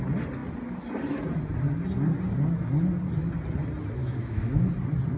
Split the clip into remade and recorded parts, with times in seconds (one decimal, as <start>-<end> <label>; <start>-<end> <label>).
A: 0.0-4.0 recorded; 4.0-4.7 remade; 4.7-5.2 recorded